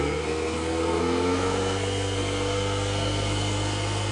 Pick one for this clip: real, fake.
fake